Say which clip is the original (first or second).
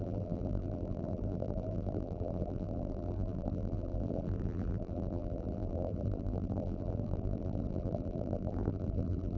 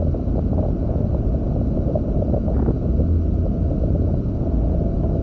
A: second